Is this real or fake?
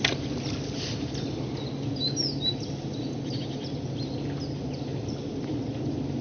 real